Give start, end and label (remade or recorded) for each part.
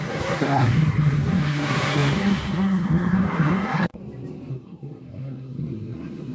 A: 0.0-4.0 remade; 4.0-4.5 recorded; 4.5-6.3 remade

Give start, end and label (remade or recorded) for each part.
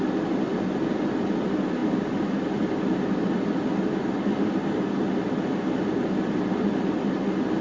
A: 0.0-0.5 recorded; 0.5-1.0 remade; 1.0-1.8 recorded; 1.8-2.4 remade; 2.4-7.6 recorded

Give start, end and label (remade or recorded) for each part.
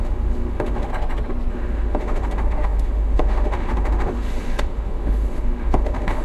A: 0.0-0.9 remade; 0.9-1.5 recorded; 1.5-6.2 remade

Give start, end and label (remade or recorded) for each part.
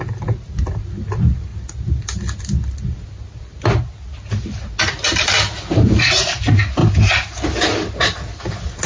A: 0.0-8.9 recorded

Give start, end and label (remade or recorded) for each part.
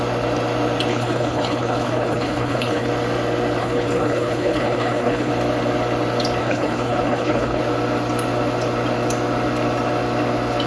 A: 0.0-0.9 recorded; 0.9-2.9 remade; 2.9-3.6 recorded; 3.6-5.3 remade; 5.3-6.4 recorded; 6.4-7.6 remade; 7.6-10.7 recorded